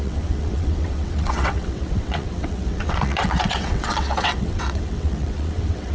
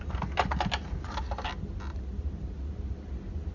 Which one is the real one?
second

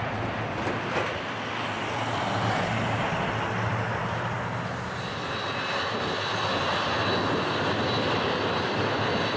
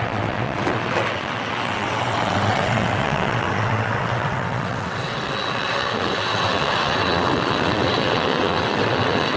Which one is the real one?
first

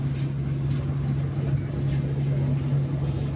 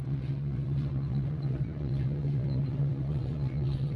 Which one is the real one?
first